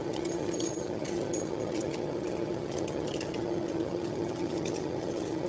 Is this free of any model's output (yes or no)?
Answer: no